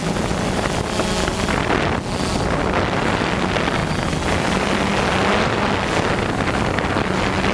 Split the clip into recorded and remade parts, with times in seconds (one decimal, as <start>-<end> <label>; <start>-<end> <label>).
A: 0.0-7.5 recorded